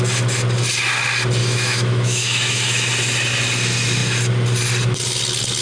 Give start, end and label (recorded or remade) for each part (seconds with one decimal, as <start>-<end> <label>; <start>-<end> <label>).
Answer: 0.0-1.4 recorded; 1.4-2.9 remade; 2.9-5.6 recorded